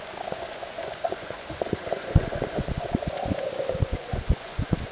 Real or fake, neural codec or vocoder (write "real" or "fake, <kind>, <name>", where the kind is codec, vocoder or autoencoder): fake, vocoder, Vocos